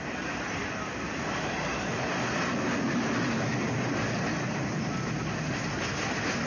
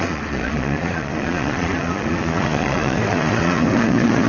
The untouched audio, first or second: first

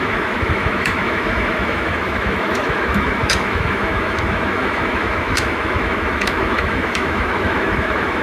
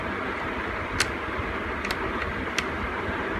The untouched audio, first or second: second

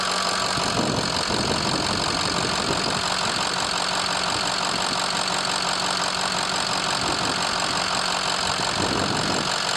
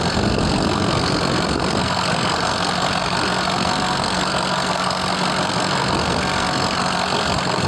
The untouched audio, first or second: first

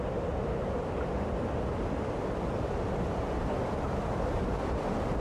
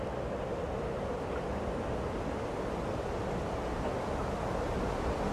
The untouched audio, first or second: second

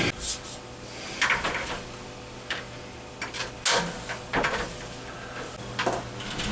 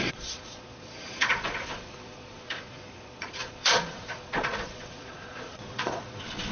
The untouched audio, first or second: first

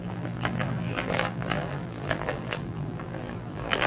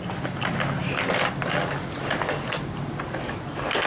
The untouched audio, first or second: second